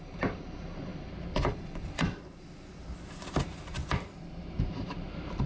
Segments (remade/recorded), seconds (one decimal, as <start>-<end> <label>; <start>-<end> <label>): 0.0-0.9 remade; 0.9-3.0 recorded; 3.0-3.8 remade; 3.8-4.4 recorded; 4.4-5.5 remade